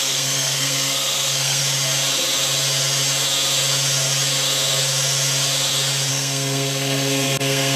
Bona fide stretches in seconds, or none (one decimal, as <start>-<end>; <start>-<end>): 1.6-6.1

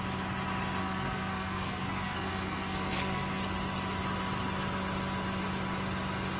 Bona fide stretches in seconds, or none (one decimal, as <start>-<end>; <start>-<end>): 0.0-0.8; 3.4-6.4

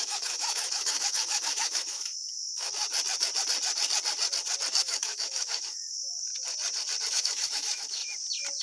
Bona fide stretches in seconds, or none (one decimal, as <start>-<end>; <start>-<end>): 2.8-4.7; 6.3-7.1; 8.0-8.6

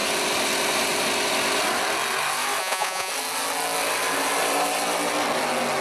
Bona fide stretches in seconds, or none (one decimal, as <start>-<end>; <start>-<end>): 0.0-2.6; 3.1-5.8

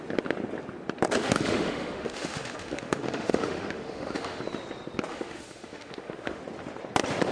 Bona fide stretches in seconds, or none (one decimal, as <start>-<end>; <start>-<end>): 0.0-1.2; 4.4-5.1; 6.4-7.3